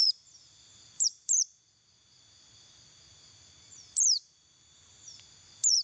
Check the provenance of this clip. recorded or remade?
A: remade